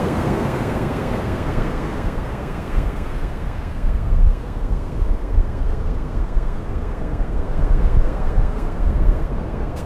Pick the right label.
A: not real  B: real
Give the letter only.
A